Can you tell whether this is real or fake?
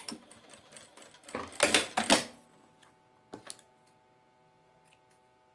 real